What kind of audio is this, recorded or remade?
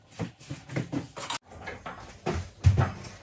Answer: recorded